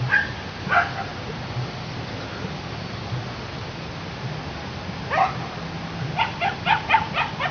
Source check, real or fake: real